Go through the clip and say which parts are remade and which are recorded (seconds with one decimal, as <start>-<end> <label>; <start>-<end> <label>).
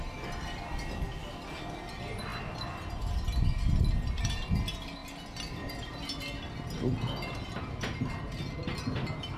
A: 0.0-9.4 recorded